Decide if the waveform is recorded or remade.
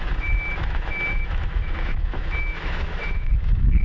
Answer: remade